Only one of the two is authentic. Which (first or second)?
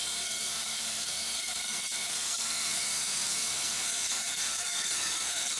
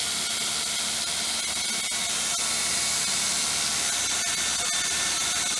second